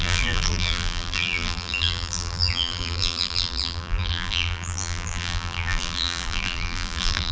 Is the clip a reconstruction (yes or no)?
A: yes